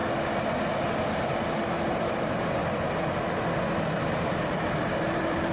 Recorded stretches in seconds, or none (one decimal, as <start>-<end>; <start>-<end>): 0.0-1.9; 2.6-3.9